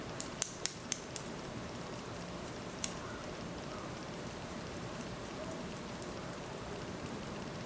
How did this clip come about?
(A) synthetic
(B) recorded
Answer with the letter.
A